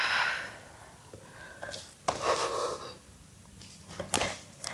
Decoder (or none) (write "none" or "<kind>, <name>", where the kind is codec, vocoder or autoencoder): none